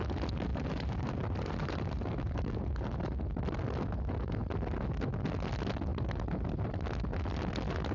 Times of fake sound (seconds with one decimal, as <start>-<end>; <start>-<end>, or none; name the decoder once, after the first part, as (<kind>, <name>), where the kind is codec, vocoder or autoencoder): 0.5-3.2 (vocoder, BigVGAN v2)